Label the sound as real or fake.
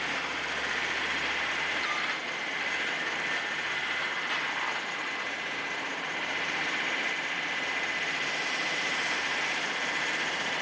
fake